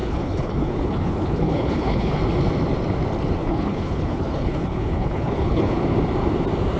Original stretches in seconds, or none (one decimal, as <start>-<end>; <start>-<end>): 2.2-3.4; 5.8-6.8

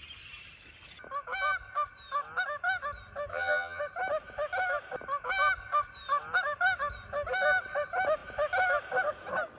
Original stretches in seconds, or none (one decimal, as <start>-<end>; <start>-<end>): 0.0-3.3; 3.8-9.6

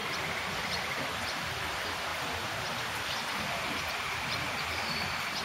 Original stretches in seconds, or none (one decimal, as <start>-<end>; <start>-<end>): 0.0-5.4

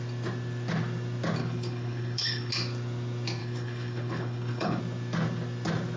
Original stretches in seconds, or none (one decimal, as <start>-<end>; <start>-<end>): 0.0-1.4; 2.5-3.4; 4.8-6.0

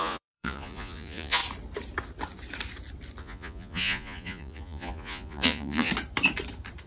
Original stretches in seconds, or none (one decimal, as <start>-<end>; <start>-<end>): 1.4-3.2; 5.9-6.9

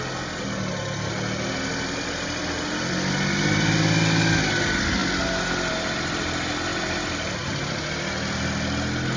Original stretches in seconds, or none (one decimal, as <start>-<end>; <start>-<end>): 0.0-9.2

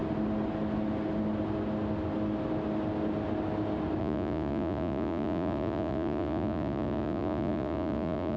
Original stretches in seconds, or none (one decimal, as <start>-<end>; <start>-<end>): 0.0-4.0